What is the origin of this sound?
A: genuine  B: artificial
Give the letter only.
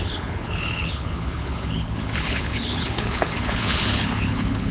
B